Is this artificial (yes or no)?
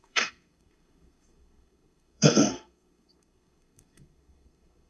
yes